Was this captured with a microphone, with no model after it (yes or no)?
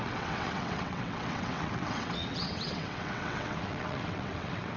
no